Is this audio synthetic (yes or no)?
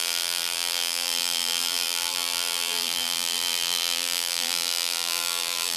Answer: yes